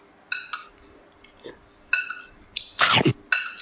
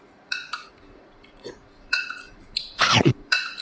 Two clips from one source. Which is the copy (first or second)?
second